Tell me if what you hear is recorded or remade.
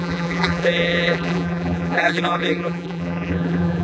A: remade